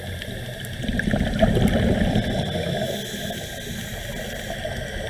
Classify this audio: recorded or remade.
recorded